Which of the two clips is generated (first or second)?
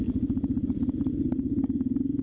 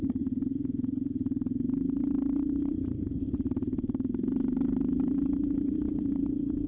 second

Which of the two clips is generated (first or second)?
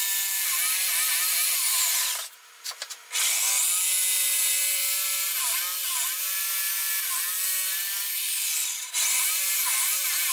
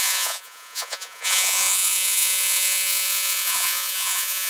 second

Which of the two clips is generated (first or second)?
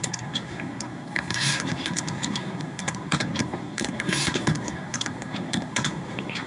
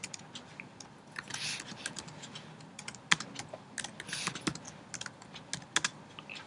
first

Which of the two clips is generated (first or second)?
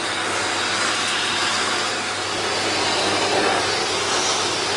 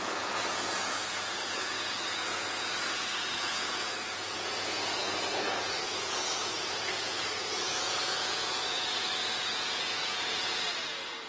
second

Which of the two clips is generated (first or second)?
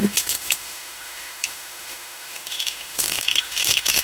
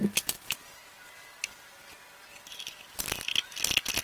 first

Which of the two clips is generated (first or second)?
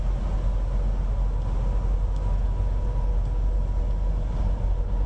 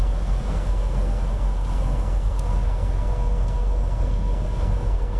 second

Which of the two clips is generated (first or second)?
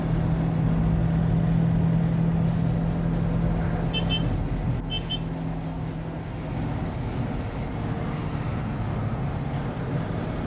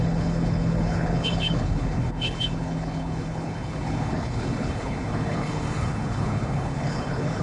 second